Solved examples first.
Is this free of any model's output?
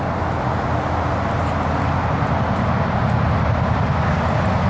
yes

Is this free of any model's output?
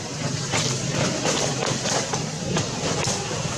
yes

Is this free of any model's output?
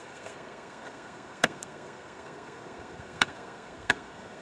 no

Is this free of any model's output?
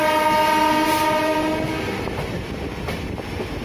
yes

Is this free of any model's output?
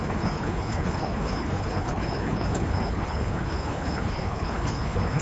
no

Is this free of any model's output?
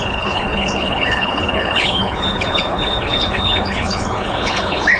no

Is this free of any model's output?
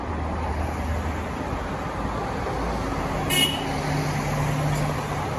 yes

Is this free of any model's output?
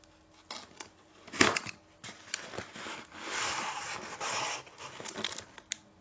yes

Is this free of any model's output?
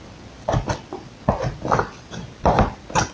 yes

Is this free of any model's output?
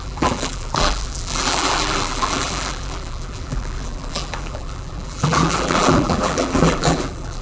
no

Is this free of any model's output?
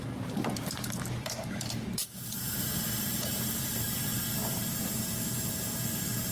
no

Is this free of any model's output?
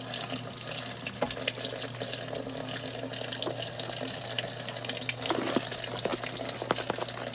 yes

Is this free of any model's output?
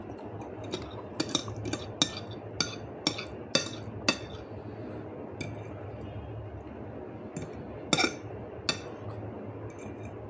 yes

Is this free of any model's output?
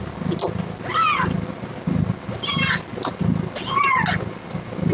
yes